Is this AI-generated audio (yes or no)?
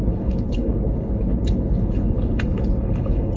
yes